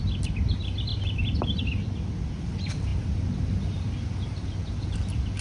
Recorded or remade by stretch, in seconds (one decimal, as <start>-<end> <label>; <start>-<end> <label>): 0.0-5.4 recorded